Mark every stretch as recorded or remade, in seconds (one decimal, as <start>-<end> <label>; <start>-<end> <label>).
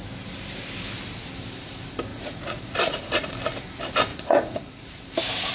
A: 0.0-2.1 recorded; 2.1-3.3 remade; 3.3-4.1 recorded; 4.1-4.7 remade; 4.7-5.5 recorded